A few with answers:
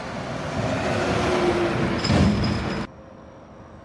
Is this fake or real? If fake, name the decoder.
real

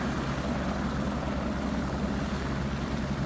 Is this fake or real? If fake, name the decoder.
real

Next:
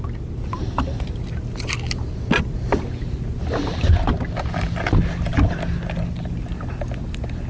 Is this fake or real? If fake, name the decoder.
real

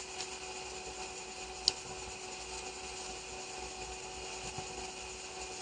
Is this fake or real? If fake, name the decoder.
real